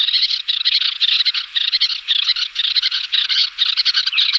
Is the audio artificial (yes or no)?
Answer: yes